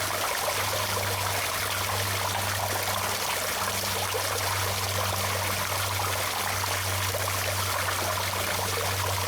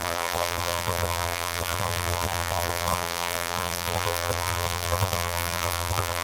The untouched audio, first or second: first